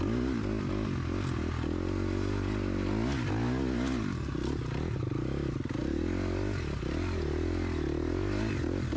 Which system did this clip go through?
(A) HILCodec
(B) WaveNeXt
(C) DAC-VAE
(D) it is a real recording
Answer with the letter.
D